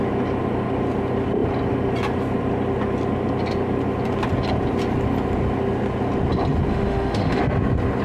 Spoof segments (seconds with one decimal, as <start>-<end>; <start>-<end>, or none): 6.7-7.4